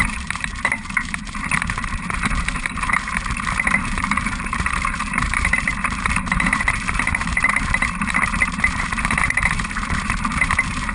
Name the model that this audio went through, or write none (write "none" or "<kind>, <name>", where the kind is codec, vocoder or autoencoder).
vocoder, BigVGAN v2